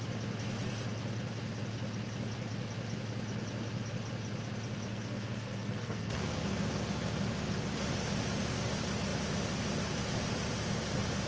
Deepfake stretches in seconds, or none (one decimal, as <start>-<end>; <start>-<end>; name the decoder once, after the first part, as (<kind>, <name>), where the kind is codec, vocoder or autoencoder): 4.9-6.4 (codec, SNAC)